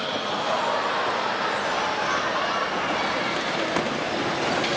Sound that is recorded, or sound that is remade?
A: recorded